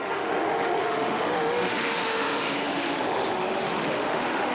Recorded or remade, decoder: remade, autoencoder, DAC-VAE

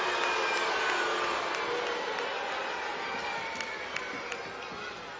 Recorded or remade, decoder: recorded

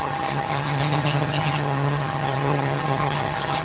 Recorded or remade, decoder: remade, vocoder, HiFi-GAN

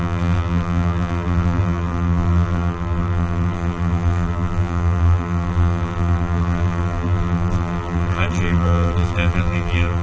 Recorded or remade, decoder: remade, vocoder, BigVGAN v2